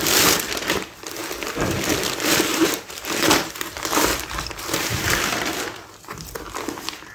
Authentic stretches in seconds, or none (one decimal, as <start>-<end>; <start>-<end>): 0.0-2.5; 5.2-7.1